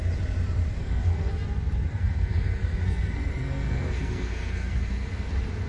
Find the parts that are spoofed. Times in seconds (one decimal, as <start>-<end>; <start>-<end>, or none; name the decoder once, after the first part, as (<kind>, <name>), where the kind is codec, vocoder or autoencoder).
0.8-1.3 (codec, SNAC); 1.9-5.3